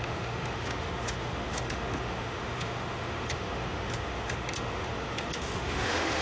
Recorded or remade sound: remade